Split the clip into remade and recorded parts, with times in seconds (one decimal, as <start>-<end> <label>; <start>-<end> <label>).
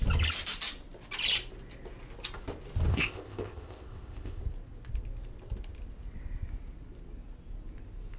0.0-2.9 recorded; 2.9-4.4 remade; 4.4-8.2 recorded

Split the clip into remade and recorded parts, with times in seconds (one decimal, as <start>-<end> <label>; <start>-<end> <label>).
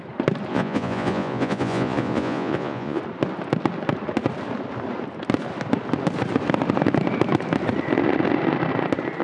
0.0-0.5 recorded; 0.5-3.0 remade; 3.0-9.2 recorded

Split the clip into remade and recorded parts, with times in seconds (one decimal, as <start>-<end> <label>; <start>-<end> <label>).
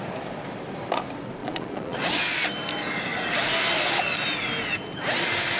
0.0-1.4 recorded; 1.4-2.2 remade; 2.2-5.6 recorded